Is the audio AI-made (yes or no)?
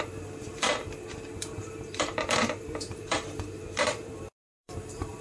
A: yes